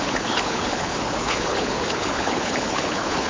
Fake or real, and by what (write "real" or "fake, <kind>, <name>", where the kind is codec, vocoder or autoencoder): fake, codec, HILCodec